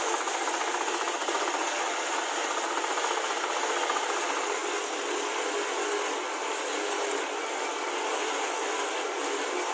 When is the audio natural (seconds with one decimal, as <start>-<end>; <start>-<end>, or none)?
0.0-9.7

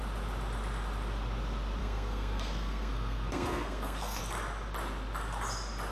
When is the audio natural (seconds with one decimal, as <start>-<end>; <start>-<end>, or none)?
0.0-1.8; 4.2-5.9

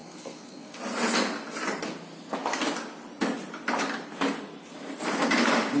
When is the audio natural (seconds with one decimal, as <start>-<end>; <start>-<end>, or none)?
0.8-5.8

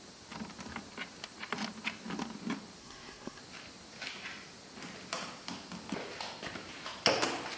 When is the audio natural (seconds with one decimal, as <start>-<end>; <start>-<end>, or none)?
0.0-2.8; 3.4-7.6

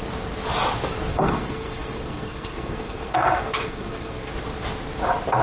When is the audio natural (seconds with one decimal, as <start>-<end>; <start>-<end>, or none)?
0.0-1.1; 4.3-5.4

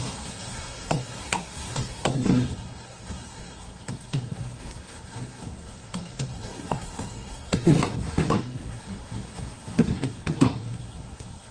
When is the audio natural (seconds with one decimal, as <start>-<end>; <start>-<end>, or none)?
none

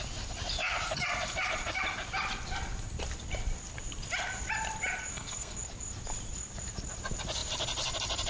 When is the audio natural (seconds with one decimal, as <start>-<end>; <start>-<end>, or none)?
0.0-5.1; 5.6-8.3